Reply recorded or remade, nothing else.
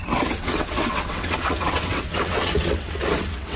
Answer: remade